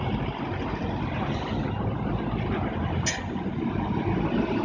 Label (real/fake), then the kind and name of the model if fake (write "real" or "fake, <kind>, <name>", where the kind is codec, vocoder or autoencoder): real